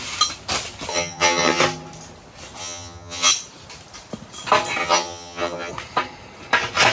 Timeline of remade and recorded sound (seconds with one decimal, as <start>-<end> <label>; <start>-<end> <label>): 0.0-0.9 recorded; 0.9-1.6 remade; 1.6-2.6 recorded; 2.6-3.3 remade; 3.3-4.8 recorded; 4.8-5.7 remade; 5.7-6.9 recorded